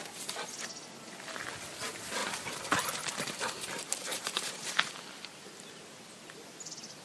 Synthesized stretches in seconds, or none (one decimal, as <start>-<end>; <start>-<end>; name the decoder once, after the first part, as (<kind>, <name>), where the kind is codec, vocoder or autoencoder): 2.2-3.6 (vocoder, BigVGAN v2); 4.0-5.8